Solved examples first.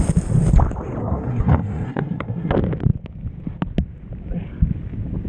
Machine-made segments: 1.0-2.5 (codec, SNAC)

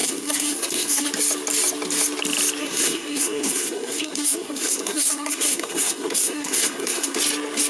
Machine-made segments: 0.0-1.1 (codec, SNAC); 2.6-7.2

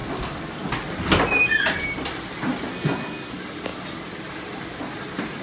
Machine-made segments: 2.7-3.3 (codec, SNAC)

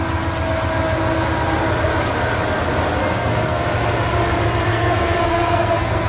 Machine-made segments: 3.0-3.6 (codec, SNAC); 4.7-6.1

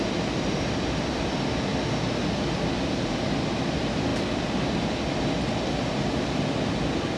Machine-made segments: none

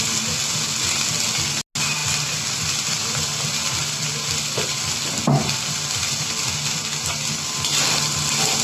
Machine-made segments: none

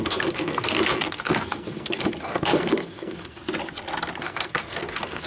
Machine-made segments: 0.0-3.4 (codec, SNAC); 4.2-5.3